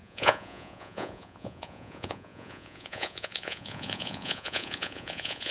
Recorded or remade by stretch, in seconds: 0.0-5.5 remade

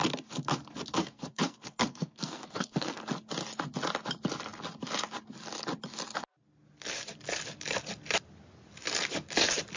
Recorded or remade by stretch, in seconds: 0.0-1.0 recorded; 1.0-3.0 remade; 3.0-9.8 recorded

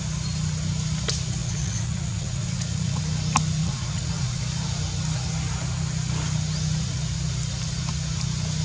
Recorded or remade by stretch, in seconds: 0.0-1.4 recorded; 1.4-3.0 remade; 3.0-3.6 recorded; 3.6-4.4 remade; 4.4-8.6 recorded

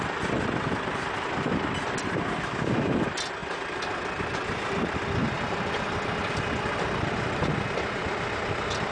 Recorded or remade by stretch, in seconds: 0.0-8.9 remade

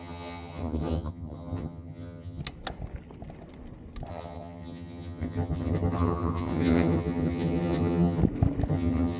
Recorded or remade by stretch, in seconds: 0.0-2.4 remade; 2.4-4.1 recorded; 4.1-8.2 remade; 8.2-8.7 recorded; 8.7-9.2 remade